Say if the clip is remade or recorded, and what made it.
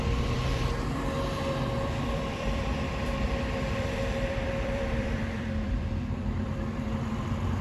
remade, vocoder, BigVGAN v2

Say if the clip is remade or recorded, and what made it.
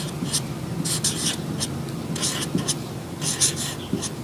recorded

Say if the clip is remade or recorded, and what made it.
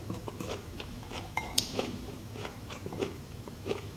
remade, autoencoder, DAC-VAE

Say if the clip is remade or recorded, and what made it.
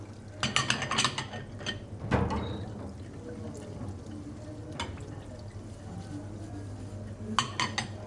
recorded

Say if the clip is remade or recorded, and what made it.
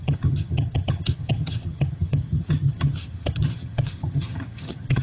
remade, vocoder, HiFi-GAN